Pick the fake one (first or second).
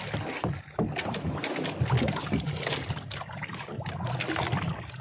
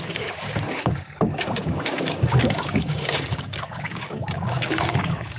second